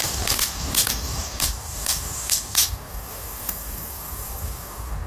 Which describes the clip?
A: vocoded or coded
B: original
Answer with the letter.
A